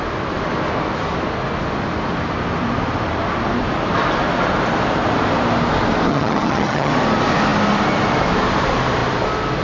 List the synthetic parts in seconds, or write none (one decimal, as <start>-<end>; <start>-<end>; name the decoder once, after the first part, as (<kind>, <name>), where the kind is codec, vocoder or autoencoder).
6.1-6.9 (vocoder, HiFi-GAN)